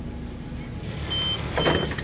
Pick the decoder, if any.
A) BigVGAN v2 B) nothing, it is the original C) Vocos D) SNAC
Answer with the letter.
B